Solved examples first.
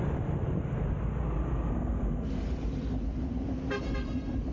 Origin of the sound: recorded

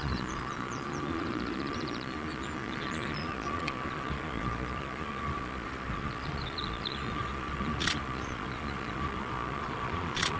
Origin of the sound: remade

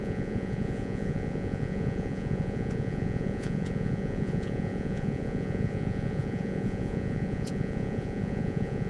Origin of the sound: remade